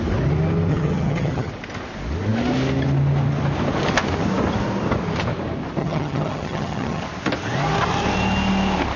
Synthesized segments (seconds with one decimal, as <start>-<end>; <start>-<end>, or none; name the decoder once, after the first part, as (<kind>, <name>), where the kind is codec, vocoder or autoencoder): 0.7-1.5 (vocoder, HiFi-GAN); 5.8-7.0